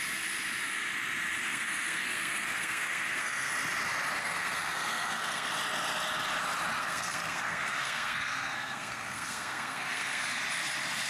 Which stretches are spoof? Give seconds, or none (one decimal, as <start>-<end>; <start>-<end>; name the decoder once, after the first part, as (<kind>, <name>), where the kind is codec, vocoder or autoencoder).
1.4-3.5 (codec, SNAC); 4.2-5.5; 6.8-10.2